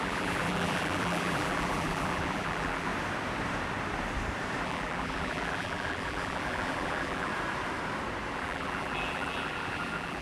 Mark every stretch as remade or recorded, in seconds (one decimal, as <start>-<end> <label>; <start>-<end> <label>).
0.0-2.9 remade; 2.9-4.6 recorded; 4.6-7.3 remade; 7.3-8.3 recorded; 8.3-10.2 remade